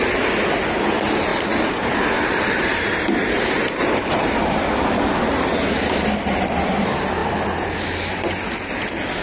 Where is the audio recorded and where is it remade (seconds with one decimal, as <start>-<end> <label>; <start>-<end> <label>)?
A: 0.0-1.3 recorded; 1.3-5.3 remade; 5.3-9.2 recorded